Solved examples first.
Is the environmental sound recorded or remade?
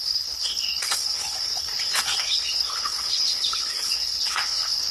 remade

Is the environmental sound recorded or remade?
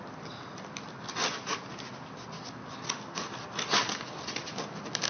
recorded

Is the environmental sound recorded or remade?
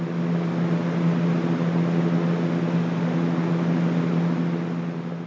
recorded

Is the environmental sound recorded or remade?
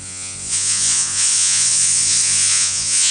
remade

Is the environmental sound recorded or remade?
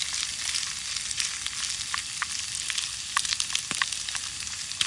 recorded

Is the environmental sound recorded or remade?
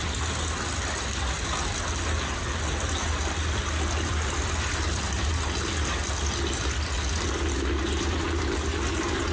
recorded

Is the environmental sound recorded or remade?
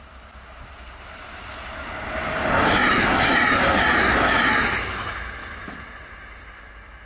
recorded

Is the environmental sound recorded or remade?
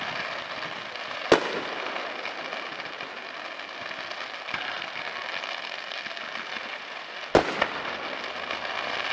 recorded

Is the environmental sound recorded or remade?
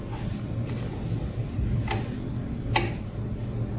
recorded